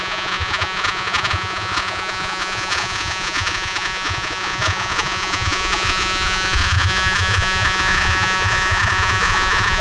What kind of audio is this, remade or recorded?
remade